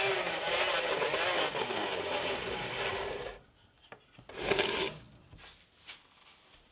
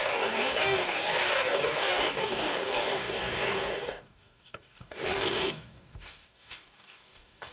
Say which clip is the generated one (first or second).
second